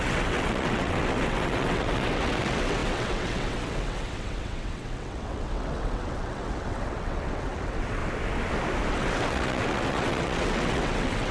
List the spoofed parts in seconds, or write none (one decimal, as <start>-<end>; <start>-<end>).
0.0-8.0; 8.9-11.3